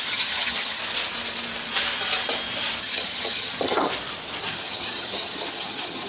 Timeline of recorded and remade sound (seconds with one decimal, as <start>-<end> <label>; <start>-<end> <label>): 0.0-0.8 remade; 0.8-2.8 recorded; 2.8-3.9 remade; 3.9-4.4 recorded; 4.4-6.1 remade